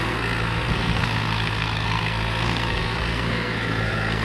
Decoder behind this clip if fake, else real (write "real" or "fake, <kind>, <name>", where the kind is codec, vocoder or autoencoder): fake, codec, SNAC